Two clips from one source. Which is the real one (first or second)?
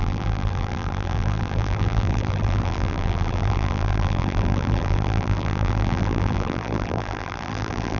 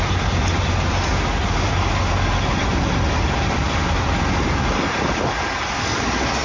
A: second